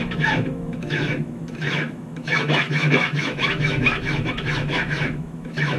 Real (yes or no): no